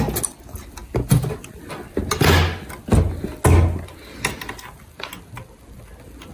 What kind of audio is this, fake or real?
real